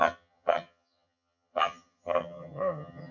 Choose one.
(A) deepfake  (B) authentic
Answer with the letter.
A